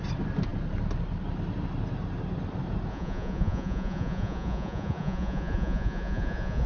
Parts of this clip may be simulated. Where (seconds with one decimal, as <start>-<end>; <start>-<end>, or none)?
2.9-6.7